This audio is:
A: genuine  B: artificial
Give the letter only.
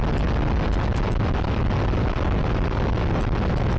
A